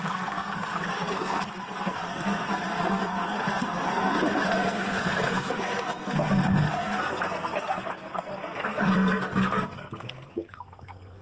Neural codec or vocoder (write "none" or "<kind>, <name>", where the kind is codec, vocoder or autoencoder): codec, SNAC